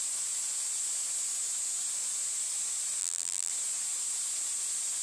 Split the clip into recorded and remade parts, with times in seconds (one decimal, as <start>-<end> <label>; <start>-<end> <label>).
0.0-3.0 recorded; 3.0-3.5 remade; 3.5-5.0 recorded